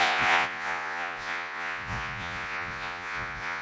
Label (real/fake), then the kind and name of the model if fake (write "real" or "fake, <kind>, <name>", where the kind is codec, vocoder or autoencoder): fake, vocoder, Vocos